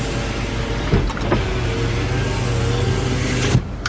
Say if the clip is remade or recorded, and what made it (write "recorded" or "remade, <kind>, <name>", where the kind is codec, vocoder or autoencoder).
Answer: recorded